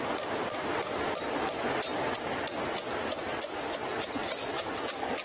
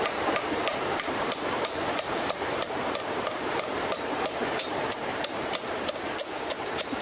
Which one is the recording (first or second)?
first